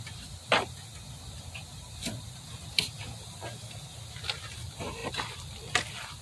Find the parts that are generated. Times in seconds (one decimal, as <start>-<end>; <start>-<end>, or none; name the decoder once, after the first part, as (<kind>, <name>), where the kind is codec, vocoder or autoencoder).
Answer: none